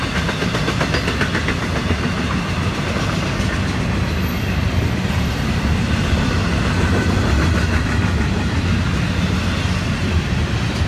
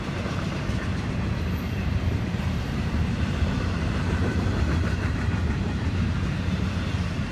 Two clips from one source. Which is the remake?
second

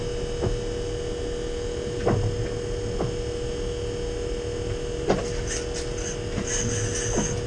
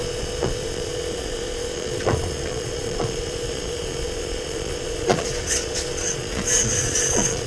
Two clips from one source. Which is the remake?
second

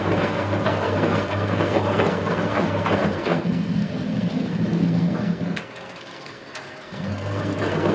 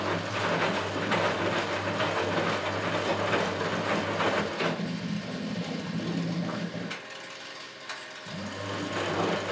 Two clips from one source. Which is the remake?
first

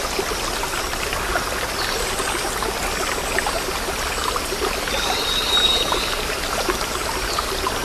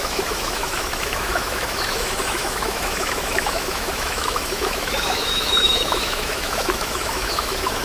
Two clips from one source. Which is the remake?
second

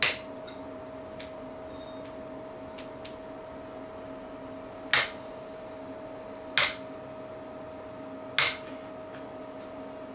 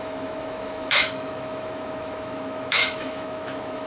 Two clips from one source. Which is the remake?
second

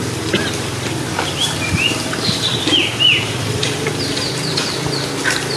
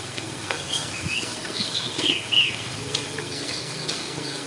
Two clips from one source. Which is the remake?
second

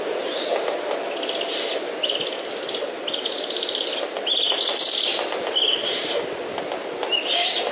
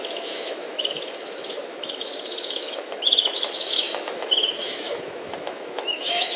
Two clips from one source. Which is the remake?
second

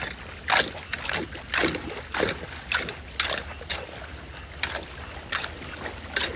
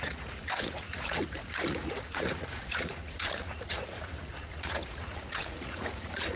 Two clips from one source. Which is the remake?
second